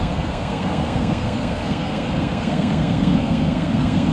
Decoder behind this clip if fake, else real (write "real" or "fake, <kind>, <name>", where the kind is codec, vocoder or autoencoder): fake, codec, SNAC